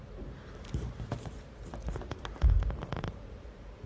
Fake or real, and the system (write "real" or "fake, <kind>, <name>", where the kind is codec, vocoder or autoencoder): fake, vocoder, BigVGAN v2